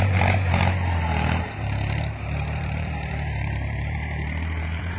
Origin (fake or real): fake